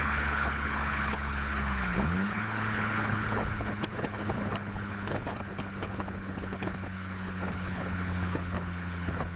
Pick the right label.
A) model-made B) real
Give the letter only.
A